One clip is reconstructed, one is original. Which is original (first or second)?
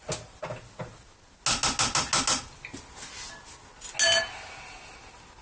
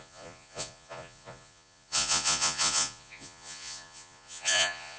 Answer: first